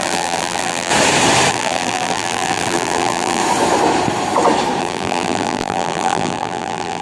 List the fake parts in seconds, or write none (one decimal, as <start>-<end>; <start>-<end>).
0.0-0.9; 1.5-3.4; 4.8-7.0